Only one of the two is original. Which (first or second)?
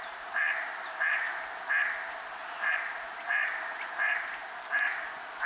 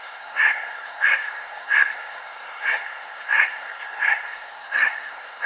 first